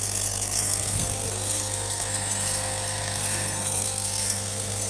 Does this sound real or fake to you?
fake